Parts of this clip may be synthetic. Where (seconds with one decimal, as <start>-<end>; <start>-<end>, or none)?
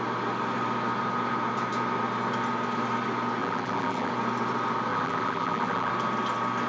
3.4-4.1; 4.9-5.9